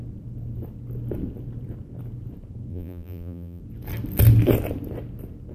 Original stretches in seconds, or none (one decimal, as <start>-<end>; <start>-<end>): 0.0-2.7; 3.6-5.5